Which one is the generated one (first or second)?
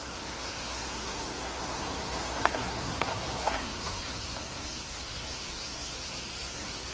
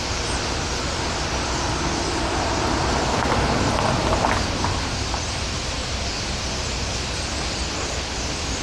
first